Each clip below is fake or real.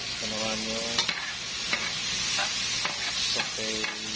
real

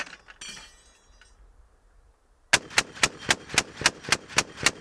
real